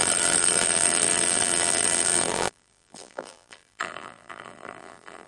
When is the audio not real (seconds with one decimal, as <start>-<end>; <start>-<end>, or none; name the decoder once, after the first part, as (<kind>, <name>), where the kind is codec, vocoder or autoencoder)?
0.0-5.3 (vocoder, BigVGAN v2)